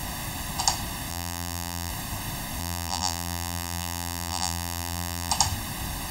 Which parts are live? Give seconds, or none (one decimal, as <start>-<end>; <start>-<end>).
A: 0.0-1.1; 1.9-2.6; 5.3-6.1